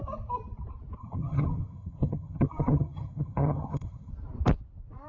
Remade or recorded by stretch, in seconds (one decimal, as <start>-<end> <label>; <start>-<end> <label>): 0.0-1.0 recorded; 1.0-4.1 remade; 4.1-5.1 recorded